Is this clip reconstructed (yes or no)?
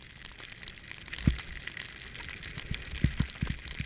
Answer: no